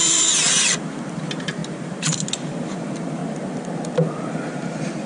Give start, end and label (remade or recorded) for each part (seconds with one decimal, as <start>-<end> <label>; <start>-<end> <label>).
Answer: 0.0-3.2 remade; 3.2-4.3 recorded; 4.3-5.1 remade